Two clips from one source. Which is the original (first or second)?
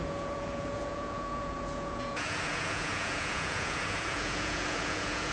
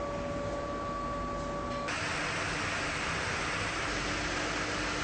second